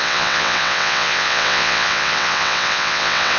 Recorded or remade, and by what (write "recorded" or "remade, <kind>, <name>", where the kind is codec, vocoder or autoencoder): remade, vocoder, WaveNeXt